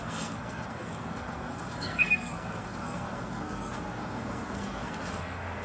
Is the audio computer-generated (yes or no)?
yes